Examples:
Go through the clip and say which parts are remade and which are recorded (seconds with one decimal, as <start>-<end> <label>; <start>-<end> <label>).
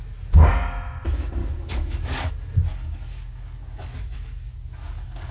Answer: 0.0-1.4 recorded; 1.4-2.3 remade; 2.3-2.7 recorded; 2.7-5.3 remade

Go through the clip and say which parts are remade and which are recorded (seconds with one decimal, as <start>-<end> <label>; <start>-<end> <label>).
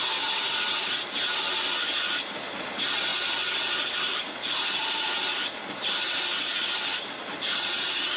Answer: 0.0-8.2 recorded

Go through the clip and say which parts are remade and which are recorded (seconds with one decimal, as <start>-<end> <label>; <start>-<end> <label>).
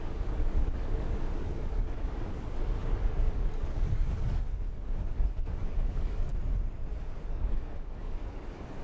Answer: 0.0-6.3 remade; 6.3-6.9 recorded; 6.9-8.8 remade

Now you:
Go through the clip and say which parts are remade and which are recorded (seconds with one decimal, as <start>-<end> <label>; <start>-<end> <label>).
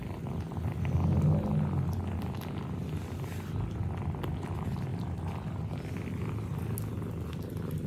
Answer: 0.0-7.9 recorded